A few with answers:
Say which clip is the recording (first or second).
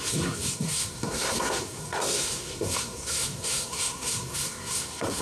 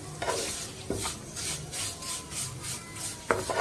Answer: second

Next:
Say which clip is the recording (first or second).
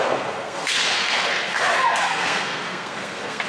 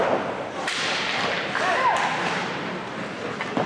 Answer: second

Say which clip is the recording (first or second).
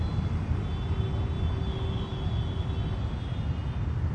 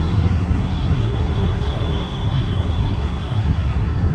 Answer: first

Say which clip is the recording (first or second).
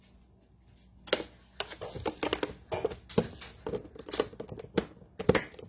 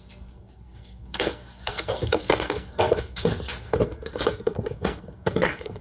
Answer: first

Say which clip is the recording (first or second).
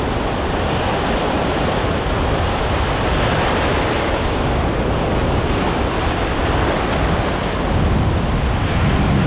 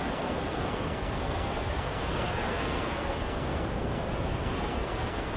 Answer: first